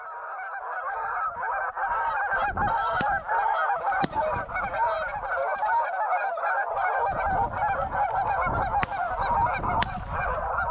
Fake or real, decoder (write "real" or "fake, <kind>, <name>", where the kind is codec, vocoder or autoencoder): real